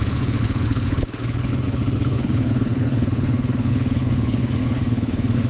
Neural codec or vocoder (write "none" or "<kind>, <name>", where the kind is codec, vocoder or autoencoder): codec, HILCodec